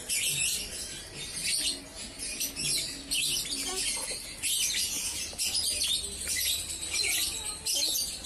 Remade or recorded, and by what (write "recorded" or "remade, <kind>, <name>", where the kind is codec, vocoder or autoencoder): recorded